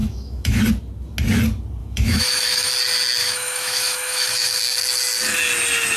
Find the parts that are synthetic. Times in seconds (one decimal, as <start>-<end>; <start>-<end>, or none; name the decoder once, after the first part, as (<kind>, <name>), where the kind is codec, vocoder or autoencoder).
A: 0.0-0.6 (autoencoder, DAC-VAE); 1.8-2.7; 3.2-4.6